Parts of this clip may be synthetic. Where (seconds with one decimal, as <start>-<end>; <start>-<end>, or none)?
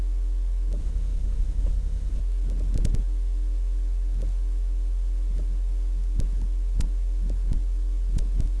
0.8-2.2